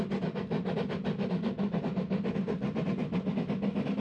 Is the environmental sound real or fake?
real